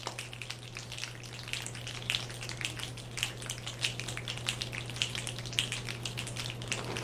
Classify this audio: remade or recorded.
recorded